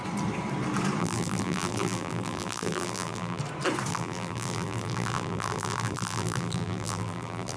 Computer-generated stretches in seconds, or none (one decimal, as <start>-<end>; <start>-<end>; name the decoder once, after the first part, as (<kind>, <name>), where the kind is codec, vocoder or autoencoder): 1.0-3.4 (vocoder, BigVGAN v2); 3.9-7.6